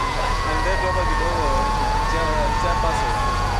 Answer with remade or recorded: remade